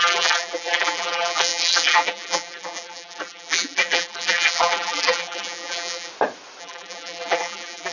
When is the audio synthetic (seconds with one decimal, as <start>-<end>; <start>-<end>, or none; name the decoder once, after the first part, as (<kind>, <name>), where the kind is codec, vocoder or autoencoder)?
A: 0.0-6.1 (vocoder, BigVGAN v2); 6.6-7.9